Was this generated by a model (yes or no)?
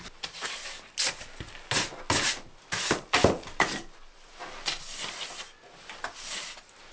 no